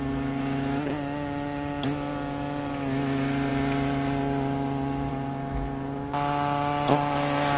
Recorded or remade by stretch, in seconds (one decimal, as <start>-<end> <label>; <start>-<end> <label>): 0.0-7.6 recorded